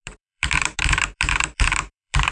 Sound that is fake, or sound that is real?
fake